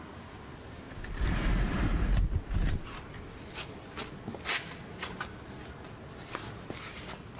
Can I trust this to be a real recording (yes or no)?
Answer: yes